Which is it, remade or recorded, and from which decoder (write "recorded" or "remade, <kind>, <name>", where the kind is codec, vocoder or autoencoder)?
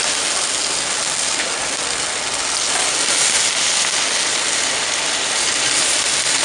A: recorded